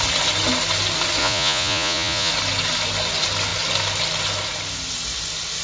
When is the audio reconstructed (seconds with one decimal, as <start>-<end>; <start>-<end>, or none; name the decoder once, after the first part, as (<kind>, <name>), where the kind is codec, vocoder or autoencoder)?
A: 1.2-2.3 (vocoder, Vocos)

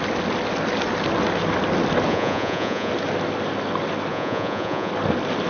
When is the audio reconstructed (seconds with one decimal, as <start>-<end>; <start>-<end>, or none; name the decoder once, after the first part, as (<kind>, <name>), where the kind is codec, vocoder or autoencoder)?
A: 2.1-2.9 (vocoder, Vocos); 4.1-4.9

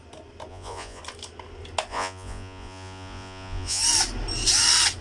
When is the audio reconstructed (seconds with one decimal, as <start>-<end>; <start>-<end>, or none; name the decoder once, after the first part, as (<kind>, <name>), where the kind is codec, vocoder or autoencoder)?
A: 0.5-1.0 (vocoder, Vocos); 1.9-3.8

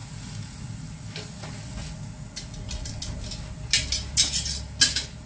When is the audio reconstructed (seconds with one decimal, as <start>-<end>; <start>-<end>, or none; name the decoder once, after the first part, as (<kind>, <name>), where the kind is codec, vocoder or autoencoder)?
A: none

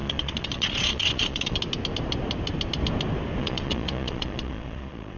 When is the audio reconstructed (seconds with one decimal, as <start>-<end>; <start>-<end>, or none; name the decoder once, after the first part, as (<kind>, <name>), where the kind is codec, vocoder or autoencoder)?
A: 0.0-1.6 (vocoder, Vocos); 3.4-5.2

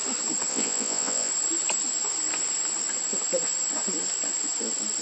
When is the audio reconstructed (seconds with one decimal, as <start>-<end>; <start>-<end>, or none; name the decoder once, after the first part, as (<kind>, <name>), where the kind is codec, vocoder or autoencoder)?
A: 0.5-1.3 (vocoder, Vocos)